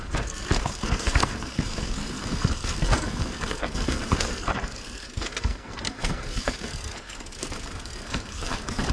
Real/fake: fake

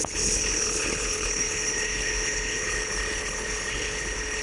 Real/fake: fake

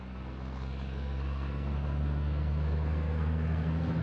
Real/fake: fake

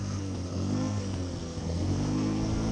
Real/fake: fake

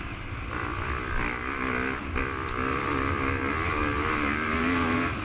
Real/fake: real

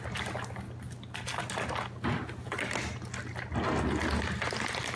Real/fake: real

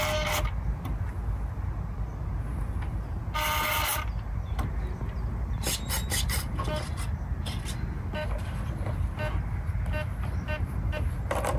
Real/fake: real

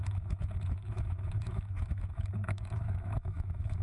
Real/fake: fake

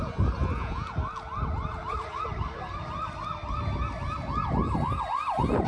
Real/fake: real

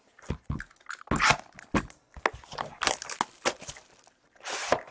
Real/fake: real